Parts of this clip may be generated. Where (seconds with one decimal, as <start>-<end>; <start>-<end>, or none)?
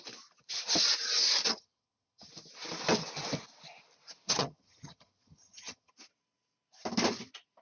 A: 1.5-2.3; 4.4-5.9